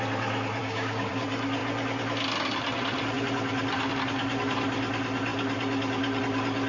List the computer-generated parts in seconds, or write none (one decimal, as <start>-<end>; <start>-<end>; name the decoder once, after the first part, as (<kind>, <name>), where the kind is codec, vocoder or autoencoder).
0.6-1.1 (codec, DAC)